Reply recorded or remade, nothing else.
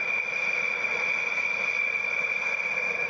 remade